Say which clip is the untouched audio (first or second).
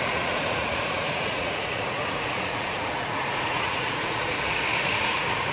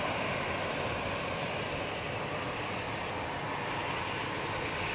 second